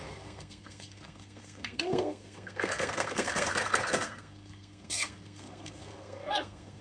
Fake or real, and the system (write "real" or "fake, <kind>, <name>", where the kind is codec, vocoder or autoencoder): fake, codec, SNAC